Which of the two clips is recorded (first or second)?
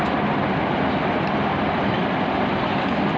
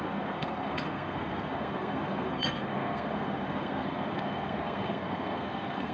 first